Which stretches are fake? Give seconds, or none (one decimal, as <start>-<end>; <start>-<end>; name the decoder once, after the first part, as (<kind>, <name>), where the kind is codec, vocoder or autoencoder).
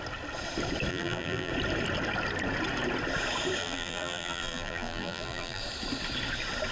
0.9-1.5 (vocoder, BigVGAN v2); 3.6-5.6